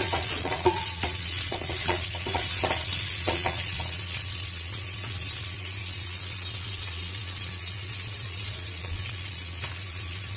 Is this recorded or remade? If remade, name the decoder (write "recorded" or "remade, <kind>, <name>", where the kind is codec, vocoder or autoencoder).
remade, vocoder, Vocos